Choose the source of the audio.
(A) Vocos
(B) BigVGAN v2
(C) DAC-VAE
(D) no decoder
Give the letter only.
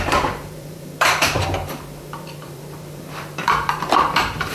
B